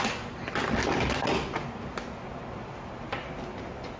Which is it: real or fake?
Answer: real